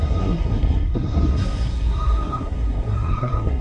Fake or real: fake